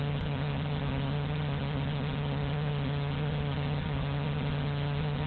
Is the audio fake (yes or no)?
yes